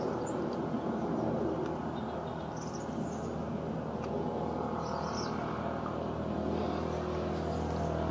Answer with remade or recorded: recorded